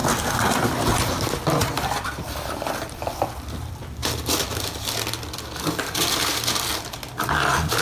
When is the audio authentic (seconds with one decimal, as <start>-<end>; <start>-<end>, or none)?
6.7-7.3